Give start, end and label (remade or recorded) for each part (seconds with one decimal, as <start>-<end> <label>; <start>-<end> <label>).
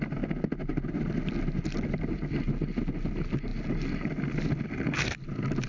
0.0-5.7 recorded